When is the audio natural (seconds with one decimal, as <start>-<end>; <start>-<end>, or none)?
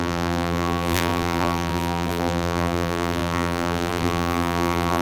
none